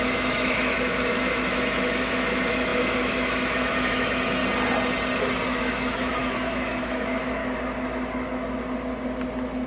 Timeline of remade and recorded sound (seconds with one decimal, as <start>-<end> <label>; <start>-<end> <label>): 0.0-4.4 remade; 4.4-5.6 recorded; 5.6-7.4 remade; 7.4-9.7 recorded